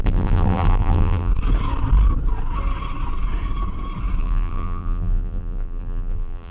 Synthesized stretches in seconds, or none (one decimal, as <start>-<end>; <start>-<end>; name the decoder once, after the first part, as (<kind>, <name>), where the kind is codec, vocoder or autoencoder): 0.0-1.3 (vocoder, BigVGAN v2); 4.2-6.5

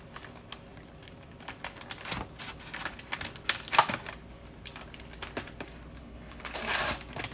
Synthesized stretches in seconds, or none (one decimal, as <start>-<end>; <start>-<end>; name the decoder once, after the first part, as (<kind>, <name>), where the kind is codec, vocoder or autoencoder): 6.0-6.6 (codec, HILCodec)

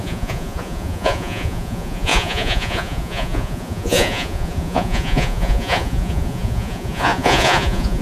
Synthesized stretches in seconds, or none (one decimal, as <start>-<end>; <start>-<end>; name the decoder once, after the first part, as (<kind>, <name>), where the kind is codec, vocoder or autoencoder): 0.0-8.0 (vocoder, Vocos)

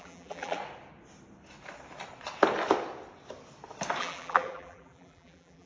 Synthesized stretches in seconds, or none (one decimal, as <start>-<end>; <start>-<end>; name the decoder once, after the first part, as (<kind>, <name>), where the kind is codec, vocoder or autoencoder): 0.0-0.6 (vocoder, BigVGAN v2); 4.0-5.7